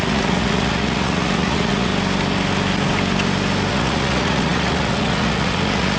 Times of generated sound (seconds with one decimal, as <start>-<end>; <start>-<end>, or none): 0.0-1.9; 3.7-6.0